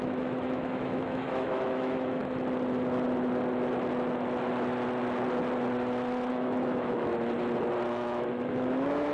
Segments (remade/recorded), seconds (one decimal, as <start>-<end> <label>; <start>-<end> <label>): 0.0-2.2 remade; 2.2-6.3 recorded; 6.3-7.1 remade; 7.1-7.9 recorded; 7.9-9.1 remade